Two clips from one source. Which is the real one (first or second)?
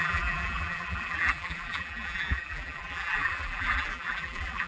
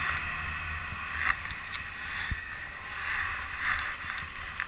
second